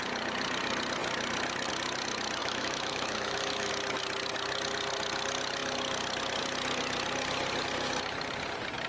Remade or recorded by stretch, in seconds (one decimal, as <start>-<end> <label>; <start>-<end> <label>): 0.0-2.4 recorded; 2.4-3.7 remade; 3.7-8.9 recorded